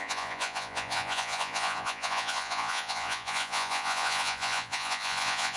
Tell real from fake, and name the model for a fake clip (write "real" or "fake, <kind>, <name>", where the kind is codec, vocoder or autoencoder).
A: fake, vocoder, Vocos